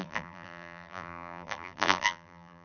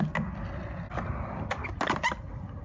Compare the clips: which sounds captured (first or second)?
second